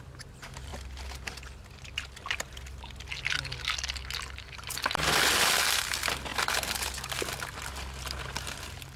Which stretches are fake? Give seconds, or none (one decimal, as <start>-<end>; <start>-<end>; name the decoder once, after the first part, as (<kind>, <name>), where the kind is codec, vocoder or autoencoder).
none